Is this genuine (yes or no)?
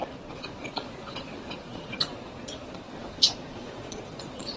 no